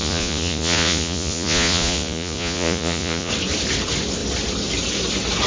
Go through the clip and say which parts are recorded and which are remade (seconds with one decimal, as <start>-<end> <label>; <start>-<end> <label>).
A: 0.0-3.3 remade; 3.3-5.5 recorded